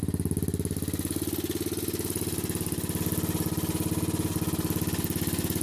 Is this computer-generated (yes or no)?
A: no